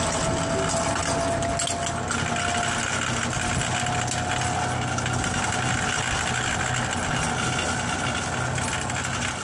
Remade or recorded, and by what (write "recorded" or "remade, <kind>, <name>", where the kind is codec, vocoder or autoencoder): recorded